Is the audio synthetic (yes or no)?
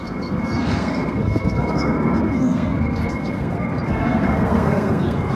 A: yes